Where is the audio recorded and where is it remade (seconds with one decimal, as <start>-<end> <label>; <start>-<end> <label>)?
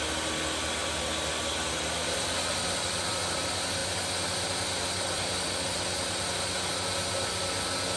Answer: 0.0-8.0 recorded